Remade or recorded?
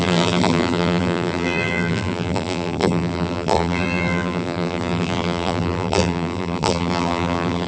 remade